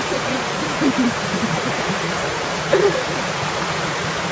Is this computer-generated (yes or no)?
yes